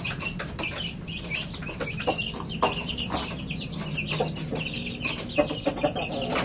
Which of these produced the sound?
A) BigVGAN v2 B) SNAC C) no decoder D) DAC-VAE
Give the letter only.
C